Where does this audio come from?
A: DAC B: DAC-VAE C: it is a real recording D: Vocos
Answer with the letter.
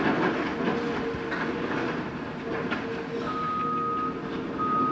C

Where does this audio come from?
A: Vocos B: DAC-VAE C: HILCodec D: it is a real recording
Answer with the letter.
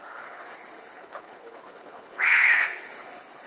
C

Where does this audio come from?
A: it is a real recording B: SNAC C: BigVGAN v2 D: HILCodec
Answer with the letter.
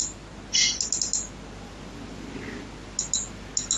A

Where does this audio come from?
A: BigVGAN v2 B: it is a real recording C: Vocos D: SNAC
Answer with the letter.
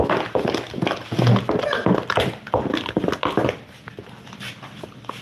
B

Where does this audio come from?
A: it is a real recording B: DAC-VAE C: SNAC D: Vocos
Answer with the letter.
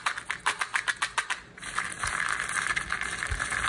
A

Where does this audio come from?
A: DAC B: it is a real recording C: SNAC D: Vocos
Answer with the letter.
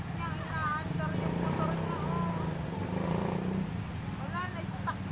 B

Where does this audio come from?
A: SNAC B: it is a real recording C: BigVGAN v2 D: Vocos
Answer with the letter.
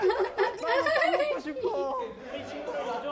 B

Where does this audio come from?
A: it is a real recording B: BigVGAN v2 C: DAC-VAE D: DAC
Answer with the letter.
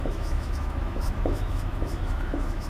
C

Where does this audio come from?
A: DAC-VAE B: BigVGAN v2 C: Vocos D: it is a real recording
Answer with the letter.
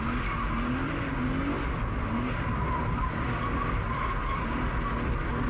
D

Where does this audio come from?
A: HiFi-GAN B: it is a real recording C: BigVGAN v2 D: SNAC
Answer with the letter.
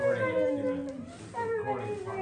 B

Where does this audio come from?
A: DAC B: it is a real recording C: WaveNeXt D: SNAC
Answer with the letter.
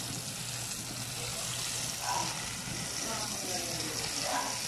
B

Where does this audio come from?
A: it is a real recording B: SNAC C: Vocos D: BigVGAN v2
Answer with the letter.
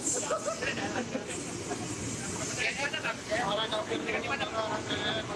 A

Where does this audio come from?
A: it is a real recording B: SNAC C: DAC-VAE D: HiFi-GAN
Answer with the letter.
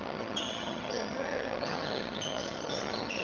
D